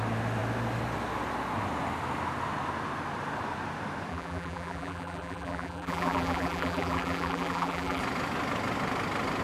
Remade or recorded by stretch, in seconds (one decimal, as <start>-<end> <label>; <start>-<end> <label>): 0.0-4.1 recorded; 4.1-8.0 remade; 8.0-9.4 recorded